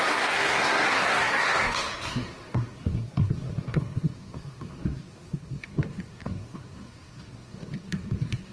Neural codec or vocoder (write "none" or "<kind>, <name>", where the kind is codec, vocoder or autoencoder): codec, SNAC